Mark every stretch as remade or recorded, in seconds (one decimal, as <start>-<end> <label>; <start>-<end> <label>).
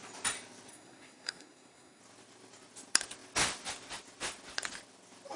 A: 0.0-0.7 recorded; 0.7-2.0 remade; 2.0-5.4 recorded